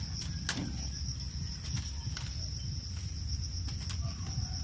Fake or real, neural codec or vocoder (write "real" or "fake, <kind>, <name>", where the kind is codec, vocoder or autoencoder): real